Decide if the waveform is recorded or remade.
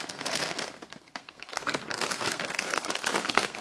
remade